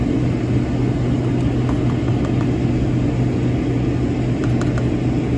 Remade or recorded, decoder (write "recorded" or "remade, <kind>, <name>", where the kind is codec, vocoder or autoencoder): recorded